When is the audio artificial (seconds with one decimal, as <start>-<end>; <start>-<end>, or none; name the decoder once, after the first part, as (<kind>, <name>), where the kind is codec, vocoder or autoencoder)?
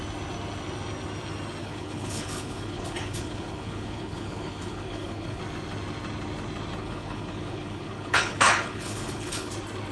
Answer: 1.6-5.4 (codec, HILCodec); 6.8-9.5